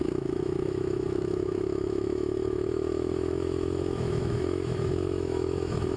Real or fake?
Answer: fake